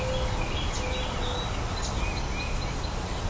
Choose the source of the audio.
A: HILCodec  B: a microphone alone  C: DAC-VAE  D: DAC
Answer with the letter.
B